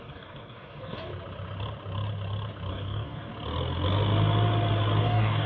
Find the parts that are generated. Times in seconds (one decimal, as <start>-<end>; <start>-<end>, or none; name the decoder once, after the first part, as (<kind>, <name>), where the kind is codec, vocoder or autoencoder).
0.0-1.1 (codec, DAC); 2.7-3.3; 5.0-5.5